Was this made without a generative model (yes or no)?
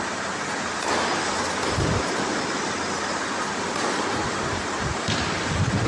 yes